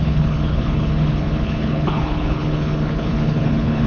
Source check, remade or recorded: remade